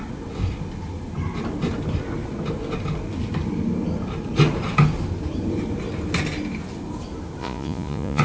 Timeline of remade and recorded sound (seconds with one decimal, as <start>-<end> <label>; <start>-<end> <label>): 0.0-7.4 recorded; 7.4-8.2 remade